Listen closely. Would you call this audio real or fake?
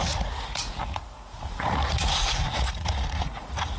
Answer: fake